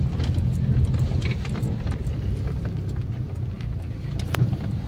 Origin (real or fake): real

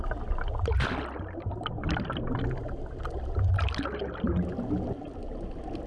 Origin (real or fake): real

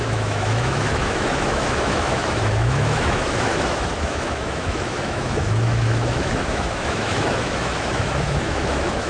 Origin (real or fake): fake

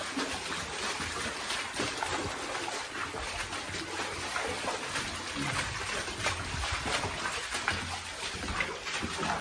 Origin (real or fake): real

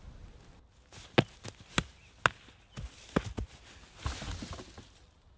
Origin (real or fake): real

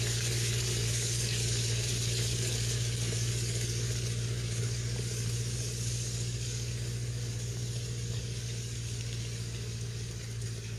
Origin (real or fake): fake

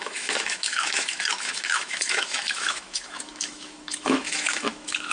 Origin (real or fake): fake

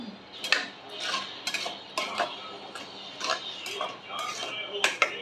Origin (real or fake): real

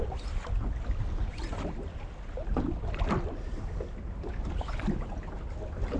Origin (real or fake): real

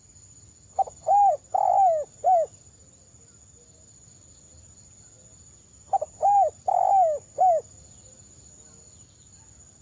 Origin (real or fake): real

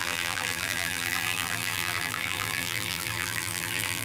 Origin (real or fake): fake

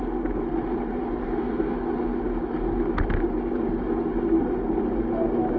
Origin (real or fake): real